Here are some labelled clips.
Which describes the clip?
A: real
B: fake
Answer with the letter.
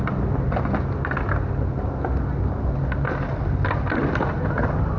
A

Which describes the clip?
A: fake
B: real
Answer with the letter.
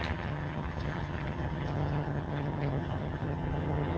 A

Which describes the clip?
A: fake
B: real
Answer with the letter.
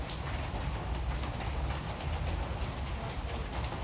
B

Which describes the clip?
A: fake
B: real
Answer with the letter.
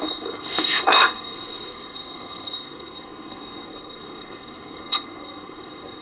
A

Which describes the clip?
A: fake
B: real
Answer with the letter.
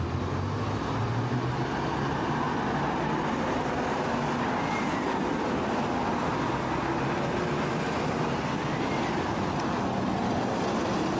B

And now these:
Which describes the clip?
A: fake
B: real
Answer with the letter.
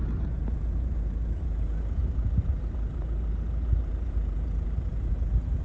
A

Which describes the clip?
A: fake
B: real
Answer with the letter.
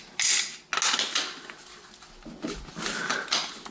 B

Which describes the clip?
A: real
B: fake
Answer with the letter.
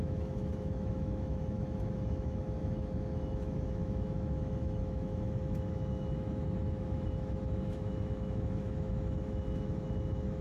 B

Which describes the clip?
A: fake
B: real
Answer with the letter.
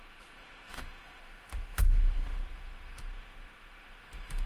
A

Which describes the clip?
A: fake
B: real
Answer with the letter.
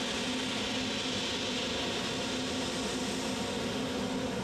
B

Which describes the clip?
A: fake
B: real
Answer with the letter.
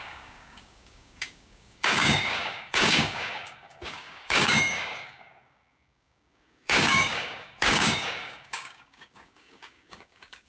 A